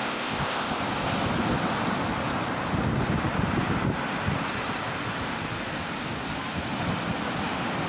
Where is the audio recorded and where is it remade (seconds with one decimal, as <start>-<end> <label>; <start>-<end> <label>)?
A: 0.0-0.8 remade; 0.8-7.9 recorded